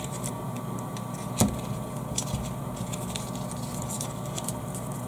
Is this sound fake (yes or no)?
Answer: no